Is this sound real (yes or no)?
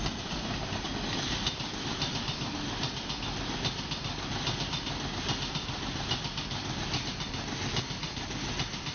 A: yes